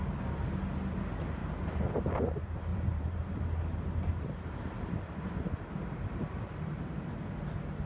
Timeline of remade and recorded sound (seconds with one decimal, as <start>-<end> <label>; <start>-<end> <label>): 0.0-1.4 recorded; 1.4-2.1 remade; 2.1-2.7 recorded; 2.7-7.1 remade; 7.1-7.9 recorded